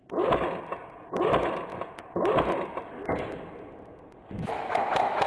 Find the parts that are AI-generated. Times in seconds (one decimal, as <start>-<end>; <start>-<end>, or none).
none